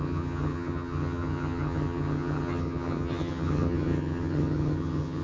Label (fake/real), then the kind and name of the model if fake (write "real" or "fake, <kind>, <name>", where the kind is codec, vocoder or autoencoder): fake, vocoder, HiFi-GAN